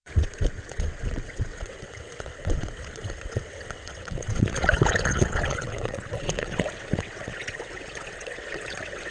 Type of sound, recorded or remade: remade